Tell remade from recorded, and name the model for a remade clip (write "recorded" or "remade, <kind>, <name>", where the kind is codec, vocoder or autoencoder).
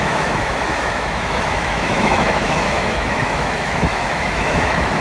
remade, autoencoder, DAC-VAE